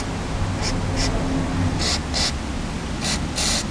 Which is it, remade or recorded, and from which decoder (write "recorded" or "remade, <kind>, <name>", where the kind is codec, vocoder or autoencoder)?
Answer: recorded